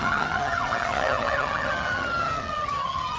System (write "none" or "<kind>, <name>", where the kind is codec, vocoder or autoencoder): vocoder, HiFi-GAN